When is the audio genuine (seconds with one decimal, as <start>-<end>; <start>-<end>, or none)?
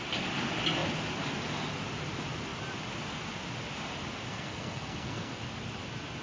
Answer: 0.0-4.3; 5.4-6.2